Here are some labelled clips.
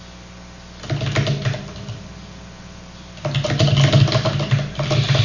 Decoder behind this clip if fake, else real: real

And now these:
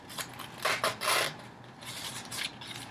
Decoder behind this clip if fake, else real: real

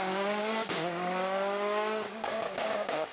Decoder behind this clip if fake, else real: fake, codec, DAC